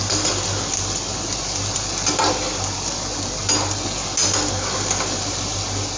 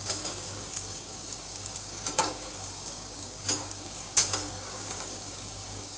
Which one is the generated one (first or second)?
second